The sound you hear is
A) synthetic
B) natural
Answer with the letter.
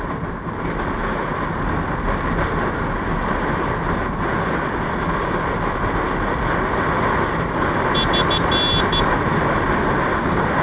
B